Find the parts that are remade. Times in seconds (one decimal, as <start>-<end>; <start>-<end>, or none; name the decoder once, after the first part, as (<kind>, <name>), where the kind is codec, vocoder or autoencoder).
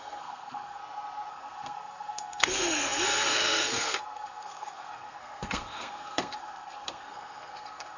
0.0-0.8 (codec, SNAC); 1.3-8.0